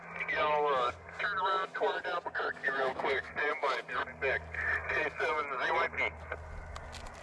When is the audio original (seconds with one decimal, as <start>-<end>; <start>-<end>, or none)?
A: 0.0-2.6; 3.3-7.2